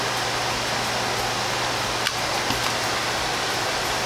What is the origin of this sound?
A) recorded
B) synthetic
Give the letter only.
A